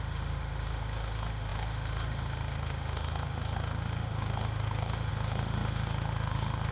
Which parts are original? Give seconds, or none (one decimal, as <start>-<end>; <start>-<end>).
none